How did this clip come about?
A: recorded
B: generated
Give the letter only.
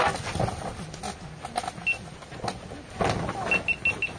A